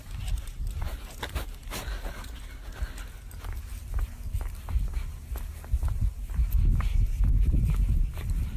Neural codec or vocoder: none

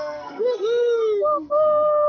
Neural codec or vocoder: codec, SNAC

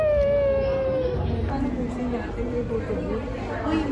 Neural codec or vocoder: none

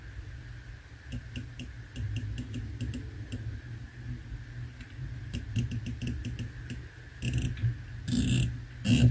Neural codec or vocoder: none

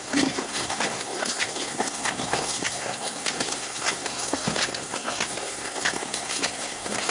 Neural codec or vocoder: codec, SNAC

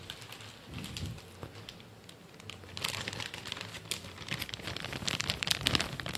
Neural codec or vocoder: none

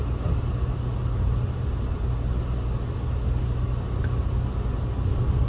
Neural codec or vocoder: none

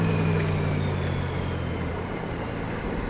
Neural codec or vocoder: none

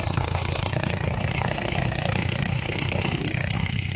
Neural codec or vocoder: codec, SNAC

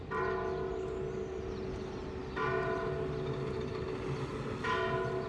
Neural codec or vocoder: none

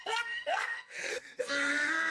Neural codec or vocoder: codec, SNAC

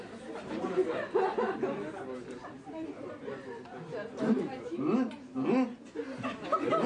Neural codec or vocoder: none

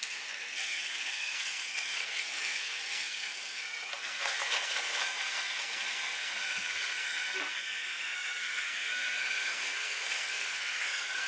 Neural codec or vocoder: codec, SNAC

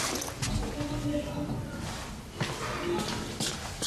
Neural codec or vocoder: none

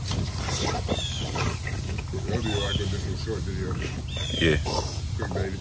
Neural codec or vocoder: none